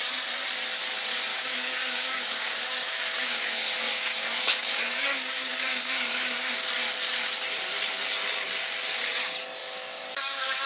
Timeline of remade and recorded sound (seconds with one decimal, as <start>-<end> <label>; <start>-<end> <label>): 0.0-1.3 recorded; 1.3-6.5 remade; 6.5-9.6 recorded; 9.6-10.7 remade